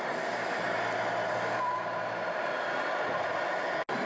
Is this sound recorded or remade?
recorded